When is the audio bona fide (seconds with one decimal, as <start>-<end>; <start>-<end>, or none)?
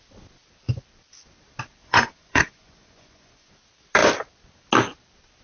0.0-1.8; 3.5-5.4